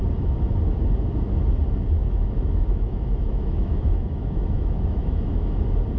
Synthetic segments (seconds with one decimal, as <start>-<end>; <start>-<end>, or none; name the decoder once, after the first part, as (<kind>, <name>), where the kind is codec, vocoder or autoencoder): 2.0-5.6 (autoencoder, DAC-VAE)